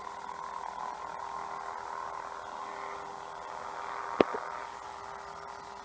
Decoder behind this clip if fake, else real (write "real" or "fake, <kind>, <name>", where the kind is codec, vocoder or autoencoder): real